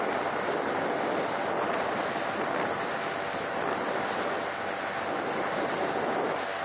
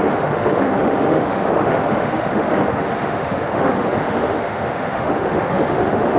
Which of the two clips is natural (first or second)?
first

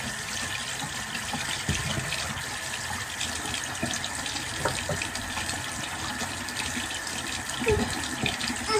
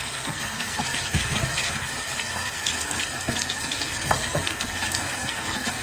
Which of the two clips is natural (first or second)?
first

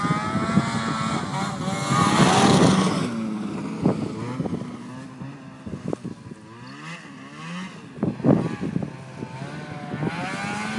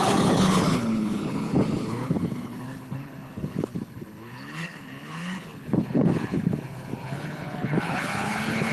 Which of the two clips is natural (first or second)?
first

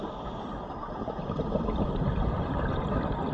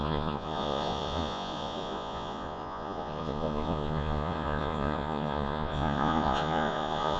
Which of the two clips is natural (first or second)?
first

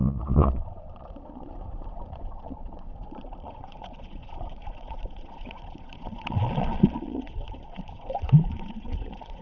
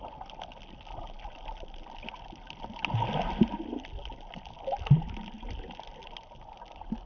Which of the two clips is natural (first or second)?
second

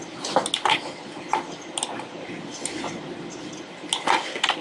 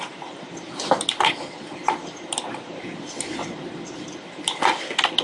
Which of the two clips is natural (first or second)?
first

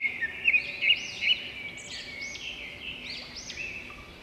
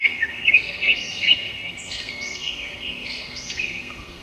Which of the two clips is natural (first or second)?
first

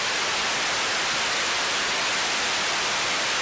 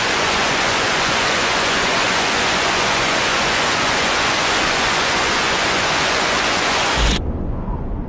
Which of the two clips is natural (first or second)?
first